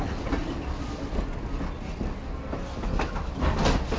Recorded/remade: recorded